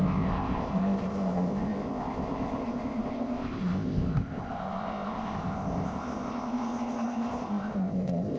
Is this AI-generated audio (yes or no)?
yes